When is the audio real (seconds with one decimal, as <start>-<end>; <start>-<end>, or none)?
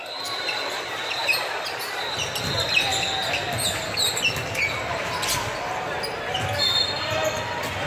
0.8-7.9